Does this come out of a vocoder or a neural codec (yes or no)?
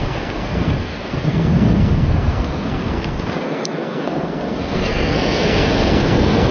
yes